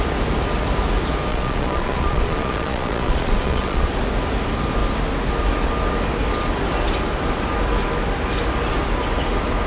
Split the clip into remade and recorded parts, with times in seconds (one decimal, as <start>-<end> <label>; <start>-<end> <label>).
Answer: 0.0-1.3 recorded; 1.3-3.9 remade; 3.9-9.7 recorded